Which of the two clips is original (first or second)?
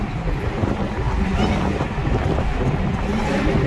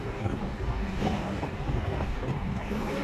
first